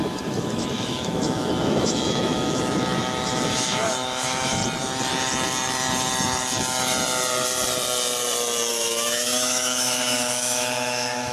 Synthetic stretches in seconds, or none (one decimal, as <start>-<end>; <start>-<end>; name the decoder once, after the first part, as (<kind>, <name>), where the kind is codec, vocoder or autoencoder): 0.0-4.6 (autoencoder, DAC-VAE); 8.7-11.3